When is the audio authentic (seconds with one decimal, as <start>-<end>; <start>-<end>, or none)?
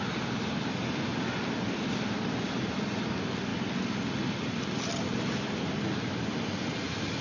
0.0-7.2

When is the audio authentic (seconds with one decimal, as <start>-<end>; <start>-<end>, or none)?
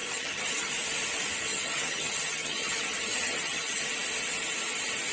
0.7-1.5; 3.8-5.1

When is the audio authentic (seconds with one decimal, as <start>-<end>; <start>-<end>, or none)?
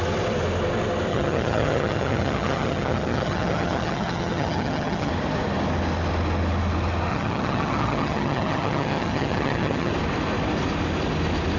0.0-1.1; 5.1-7.1; 9.9-11.6